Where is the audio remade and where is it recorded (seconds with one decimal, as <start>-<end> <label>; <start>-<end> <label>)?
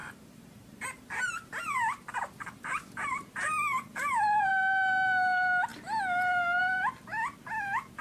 0.0-4.5 remade; 4.5-8.0 recorded